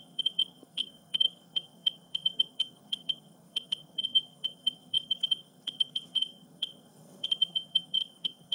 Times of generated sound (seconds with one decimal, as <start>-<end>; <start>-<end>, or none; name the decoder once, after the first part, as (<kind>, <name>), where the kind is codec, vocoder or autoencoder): 0.0-8.5 (codec, SNAC)